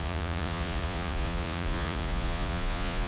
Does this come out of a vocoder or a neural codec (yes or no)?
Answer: yes